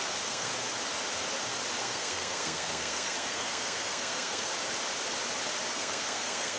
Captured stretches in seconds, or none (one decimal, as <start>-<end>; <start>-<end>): 0.5-1.8; 4.5-5.7

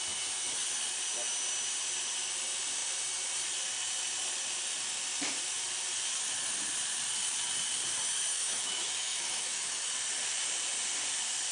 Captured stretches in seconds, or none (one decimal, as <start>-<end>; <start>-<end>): 0.0-8.3; 9.9-11.5

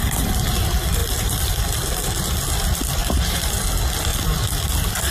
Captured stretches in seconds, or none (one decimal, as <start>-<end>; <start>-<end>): 0.0-1.0; 1.6-3.0; 3.6-4.1

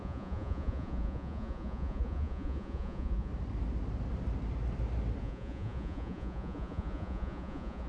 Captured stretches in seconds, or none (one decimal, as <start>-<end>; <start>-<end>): 3.3-5.2

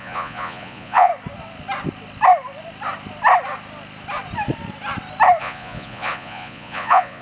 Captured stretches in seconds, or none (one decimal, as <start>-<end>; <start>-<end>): 1.1-5.4

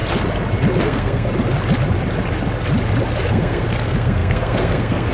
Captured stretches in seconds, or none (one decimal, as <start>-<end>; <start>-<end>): 0.0-0.8; 1.3-3.3

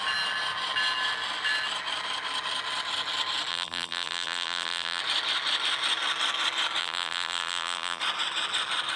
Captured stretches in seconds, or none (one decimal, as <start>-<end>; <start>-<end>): 0.0-3.5; 5.0-6.8; 8.0-9.0